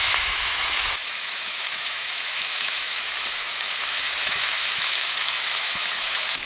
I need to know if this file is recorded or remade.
remade